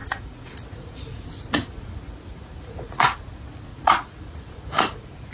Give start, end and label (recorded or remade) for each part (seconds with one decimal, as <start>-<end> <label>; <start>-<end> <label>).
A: 0.0-3.2 remade; 3.2-3.7 recorded; 3.7-5.3 remade